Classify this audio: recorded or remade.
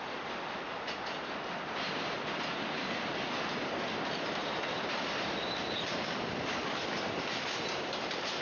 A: remade